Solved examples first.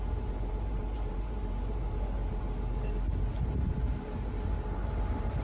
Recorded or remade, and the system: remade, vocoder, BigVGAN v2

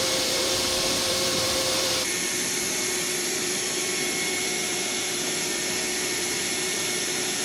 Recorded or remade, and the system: remade, vocoder, BigVGAN v2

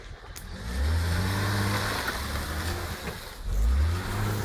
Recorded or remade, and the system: recorded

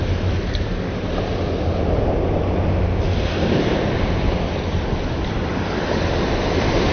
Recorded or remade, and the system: recorded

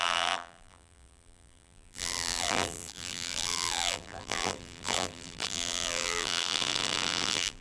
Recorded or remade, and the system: remade, vocoder, BigVGAN v2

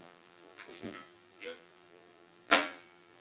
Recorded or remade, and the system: remade, vocoder, BigVGAN v2